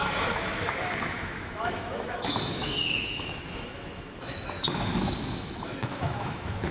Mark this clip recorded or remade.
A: remade